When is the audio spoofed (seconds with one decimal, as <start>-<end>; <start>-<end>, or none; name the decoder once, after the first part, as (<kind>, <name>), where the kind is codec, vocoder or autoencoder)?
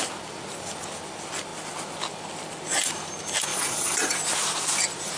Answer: 3.5-4.1 (vocoder, Vocos)